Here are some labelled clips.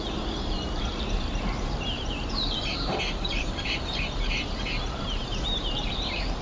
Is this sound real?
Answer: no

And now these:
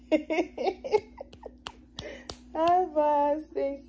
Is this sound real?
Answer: yes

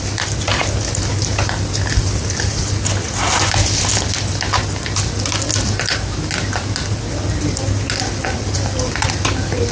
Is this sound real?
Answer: yes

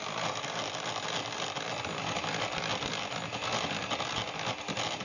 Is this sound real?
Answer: yes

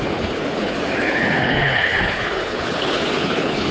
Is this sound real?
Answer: no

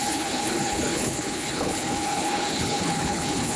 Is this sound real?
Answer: no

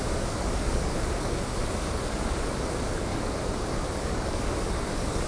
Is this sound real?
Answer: no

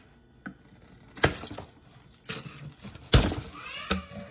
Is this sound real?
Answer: yes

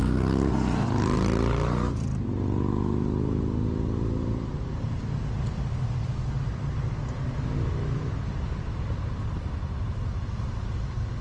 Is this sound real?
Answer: yes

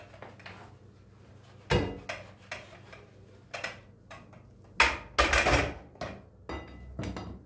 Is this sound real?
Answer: yes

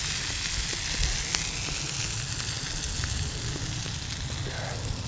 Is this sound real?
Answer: yes